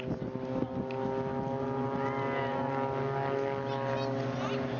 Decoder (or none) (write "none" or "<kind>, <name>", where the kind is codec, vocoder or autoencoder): none